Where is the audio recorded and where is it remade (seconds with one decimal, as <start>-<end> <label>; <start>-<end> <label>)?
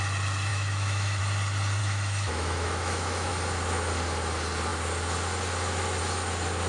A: 0.0-0.5 recorded; 0.5-1.2 remade; 1.2-1.8 recorded; 1.8-3.3 remade; 3.3-6.7 recorded